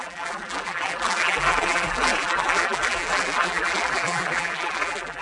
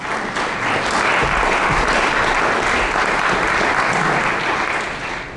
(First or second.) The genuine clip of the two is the second